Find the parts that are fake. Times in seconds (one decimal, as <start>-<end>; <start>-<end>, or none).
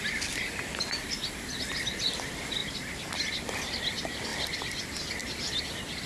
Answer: none